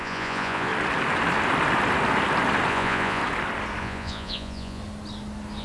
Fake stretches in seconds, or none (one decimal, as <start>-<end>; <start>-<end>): 0.0-0.7; 2.7-3.2; 3.8-4.8